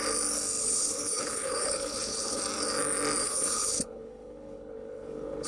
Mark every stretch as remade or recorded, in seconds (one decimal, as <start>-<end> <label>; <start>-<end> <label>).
0.0-0.6 recorded; 0.6-2.4 remade; 2.4-3.2 recorded; 3.2-5.5 remade